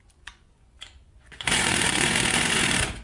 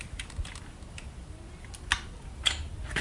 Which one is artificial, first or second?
first